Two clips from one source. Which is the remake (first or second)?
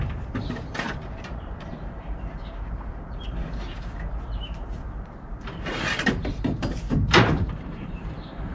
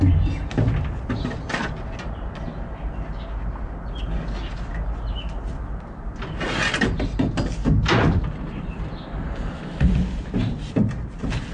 first